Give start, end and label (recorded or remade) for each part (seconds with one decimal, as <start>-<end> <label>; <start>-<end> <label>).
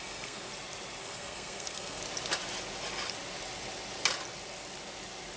0.0-0.5 remade; 0.5-1.0 recorded; 1.0-2.0 remade; 2.0-5.4 recorded